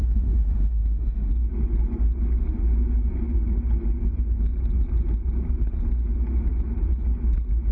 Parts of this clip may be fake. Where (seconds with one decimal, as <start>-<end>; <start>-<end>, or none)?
0.0-1.3